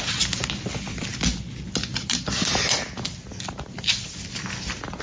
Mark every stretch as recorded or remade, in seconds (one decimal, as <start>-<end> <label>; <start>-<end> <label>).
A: 0.0-5.0 recorded